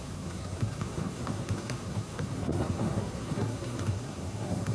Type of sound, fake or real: fake